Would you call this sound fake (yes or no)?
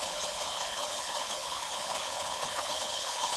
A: yes